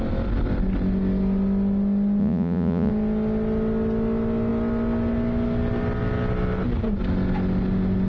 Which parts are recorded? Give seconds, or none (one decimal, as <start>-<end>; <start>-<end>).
0.0-2.2; 2.9-8.1